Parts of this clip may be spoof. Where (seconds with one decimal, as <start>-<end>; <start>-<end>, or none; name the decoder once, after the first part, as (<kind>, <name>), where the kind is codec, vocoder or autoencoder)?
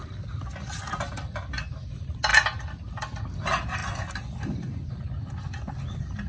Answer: none